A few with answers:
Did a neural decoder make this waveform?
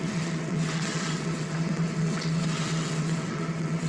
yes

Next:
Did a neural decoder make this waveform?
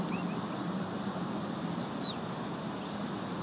no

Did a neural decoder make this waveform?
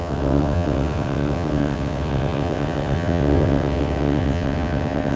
yes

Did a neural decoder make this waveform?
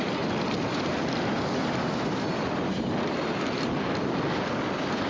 no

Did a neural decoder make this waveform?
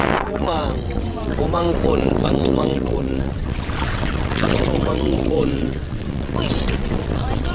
yes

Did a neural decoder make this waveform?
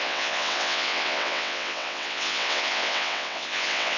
yes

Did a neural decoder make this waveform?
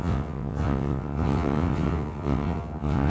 yes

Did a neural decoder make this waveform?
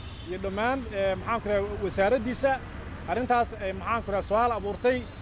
no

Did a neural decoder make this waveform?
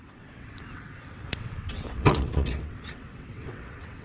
yes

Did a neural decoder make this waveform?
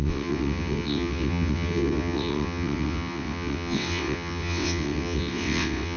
yes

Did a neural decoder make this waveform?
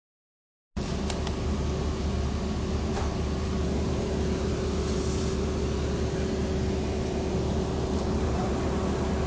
no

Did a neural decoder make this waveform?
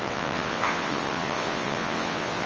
yes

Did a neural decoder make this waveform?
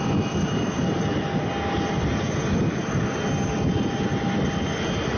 no